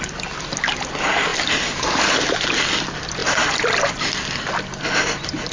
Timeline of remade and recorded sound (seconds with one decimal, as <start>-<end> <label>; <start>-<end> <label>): 0.0-5.5 recorded